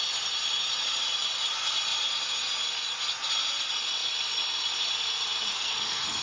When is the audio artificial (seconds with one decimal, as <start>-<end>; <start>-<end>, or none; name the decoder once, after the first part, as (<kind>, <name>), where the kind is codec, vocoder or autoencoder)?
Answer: 5.5-6.2 (codec, SNAC)